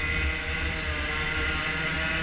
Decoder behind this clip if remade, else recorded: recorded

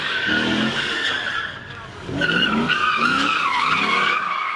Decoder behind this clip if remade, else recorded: remade, codec, DAC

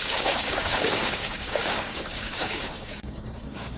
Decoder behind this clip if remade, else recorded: remade, codec, DAC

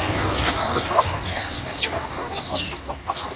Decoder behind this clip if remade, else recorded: remade, codec, DAC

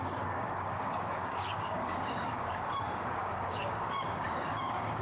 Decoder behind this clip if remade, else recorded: remade, codec, DAC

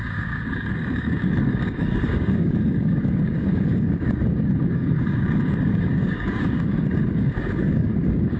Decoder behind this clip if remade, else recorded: remade, codec, DAC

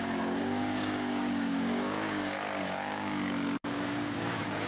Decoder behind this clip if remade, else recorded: remade, codec, DAC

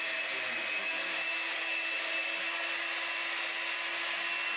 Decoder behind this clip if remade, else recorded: recorded